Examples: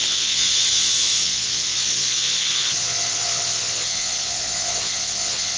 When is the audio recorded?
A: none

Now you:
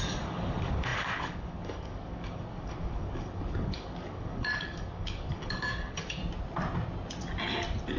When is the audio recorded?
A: 6.2-8.0

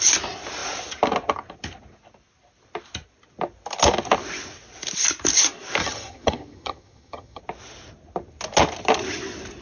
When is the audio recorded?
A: 0.0-5.8; 7.4-9.6

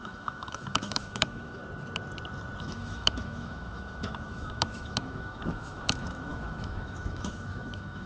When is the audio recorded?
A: 1.6-2.6

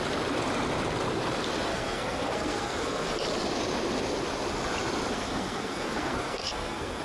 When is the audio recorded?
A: 0.0-1.7; 3.1-5.1

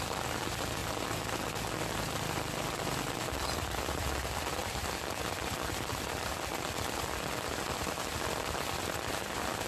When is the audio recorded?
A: 0.8-3.3; 4.6-8.0

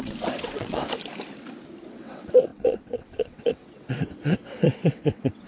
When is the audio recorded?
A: 0.8-1.9

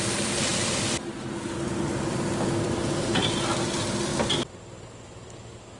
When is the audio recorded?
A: 0.0-0.5; 3.0-5.8